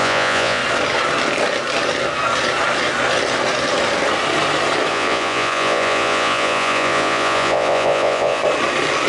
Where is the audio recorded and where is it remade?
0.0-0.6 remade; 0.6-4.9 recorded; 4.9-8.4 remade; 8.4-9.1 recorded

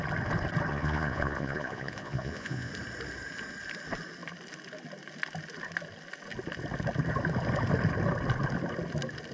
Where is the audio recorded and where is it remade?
0.0-0.7 recorded; 0.7-2.7 remade; 2.7-9.3 recorded

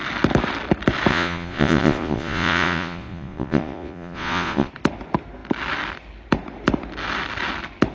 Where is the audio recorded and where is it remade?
0.0-1.1 recorded; 1.1-4.7 remade; 4.7-7.9 recorded

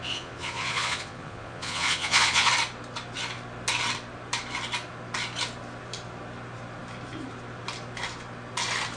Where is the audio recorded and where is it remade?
0.0-2.5 remade; 2.5-9.0 recorded

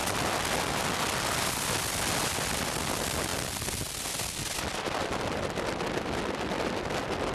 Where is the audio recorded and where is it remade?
0.0-7.3 recorded

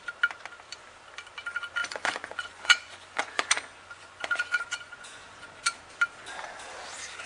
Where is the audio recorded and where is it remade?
0.0-1.8 recorded; 1.8-5.8 remade; 5.8-7.3 recorded

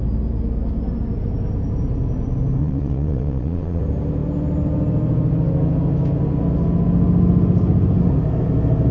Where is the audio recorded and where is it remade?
0.0-2.6 recorded; 2.6-3.8 remade; 3.8-8.9 recorded

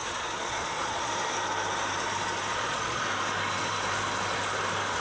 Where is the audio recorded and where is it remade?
0.0-1.1 remade; 1.1-2.5 recorded; 2.5-3.0 remade; 3.0-5.0 recorded